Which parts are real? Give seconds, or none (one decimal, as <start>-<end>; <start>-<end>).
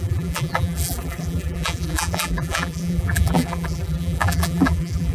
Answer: none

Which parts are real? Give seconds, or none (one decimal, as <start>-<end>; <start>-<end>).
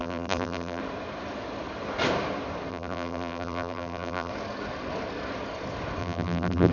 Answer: 0.8-2.7; 4.3-6.0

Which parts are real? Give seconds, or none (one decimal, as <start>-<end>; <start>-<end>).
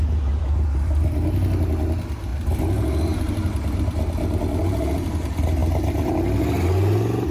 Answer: 0.0-7.3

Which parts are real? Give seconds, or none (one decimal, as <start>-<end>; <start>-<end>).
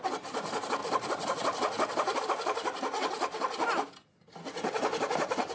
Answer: 0.0-5.5